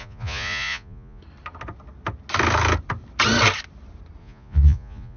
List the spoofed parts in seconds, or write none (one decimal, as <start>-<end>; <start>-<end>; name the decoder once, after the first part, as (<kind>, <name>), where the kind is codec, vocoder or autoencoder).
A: 0.0-1.2 (vocoder, Vocos); 4.2-5.2